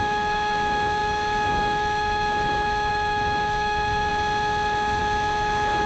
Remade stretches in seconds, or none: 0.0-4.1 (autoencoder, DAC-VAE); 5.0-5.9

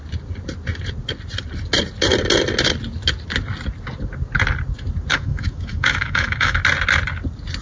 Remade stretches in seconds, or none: 5.1-6.6 (autoencoder, DAC-VAE)

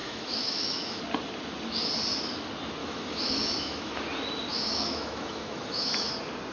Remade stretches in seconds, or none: 0.0-1.0 (autoencoder, DAC-VAE); 2.8-3.9; 4.5-6.1

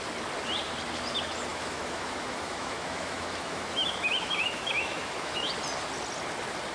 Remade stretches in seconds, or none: 1.5-5.5 (autoencoder, DAC-VAE)

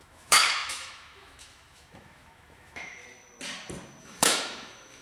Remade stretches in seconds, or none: 0.0-3.0 (autoencoder, DAC-VAE); 4.0-5.0